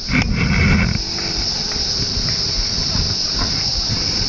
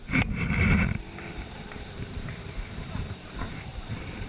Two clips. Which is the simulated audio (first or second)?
second